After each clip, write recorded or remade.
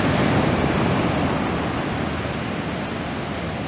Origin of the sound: recorded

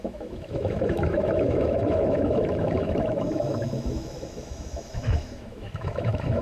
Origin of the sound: remade